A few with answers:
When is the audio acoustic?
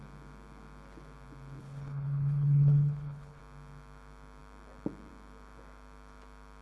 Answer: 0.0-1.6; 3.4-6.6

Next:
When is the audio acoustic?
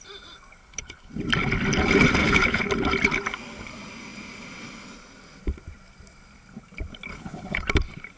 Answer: 0.0-0.6; 1.1-2.2; 2.7-7.1; 7.7-8.2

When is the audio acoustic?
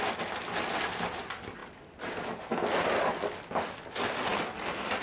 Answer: 0.0-5.0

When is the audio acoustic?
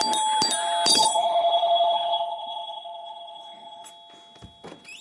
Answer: 0.0-0.9; 3.9-5.0